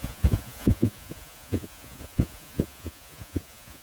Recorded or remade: remade